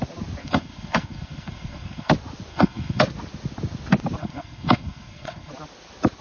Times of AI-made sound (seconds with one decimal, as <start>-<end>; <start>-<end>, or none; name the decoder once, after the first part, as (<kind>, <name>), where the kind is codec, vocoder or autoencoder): 0.4-2.1 (codec, SNAC); 2.5-3.0; 4.2-5.5